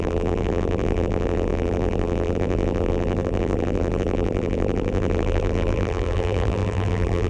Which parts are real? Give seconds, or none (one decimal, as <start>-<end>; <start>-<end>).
none